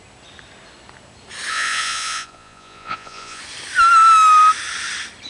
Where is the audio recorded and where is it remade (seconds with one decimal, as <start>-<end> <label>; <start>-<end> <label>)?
0.0-1.5 recorded; 1.5-3.4 remade; 3.4-5.3 recorded